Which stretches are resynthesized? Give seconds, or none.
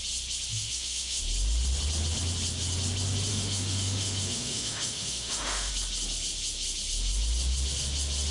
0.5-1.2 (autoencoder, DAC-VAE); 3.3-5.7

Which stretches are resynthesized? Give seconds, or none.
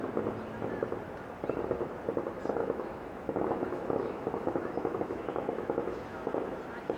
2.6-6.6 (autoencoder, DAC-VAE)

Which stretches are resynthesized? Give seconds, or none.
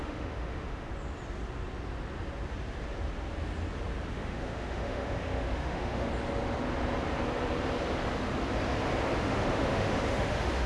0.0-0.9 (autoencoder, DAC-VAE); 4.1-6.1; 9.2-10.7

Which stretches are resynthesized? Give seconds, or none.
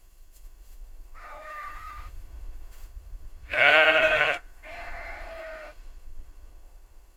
0.0-7.2 (autoencoder, DAC-VAE)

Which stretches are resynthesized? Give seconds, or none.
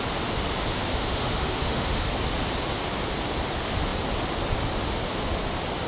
0.9-2.1 (autoencoder, DAC-VAE)